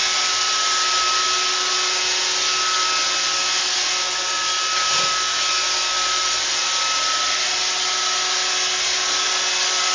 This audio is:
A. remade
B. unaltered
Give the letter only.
B